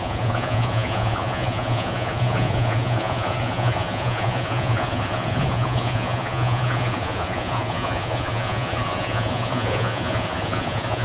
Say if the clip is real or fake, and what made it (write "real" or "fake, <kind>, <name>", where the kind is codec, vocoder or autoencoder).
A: fake, vocoder, Vocos